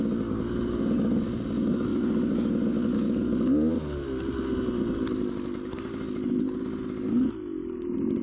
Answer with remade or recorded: recorded